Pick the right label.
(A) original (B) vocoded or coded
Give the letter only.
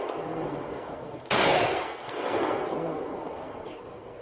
B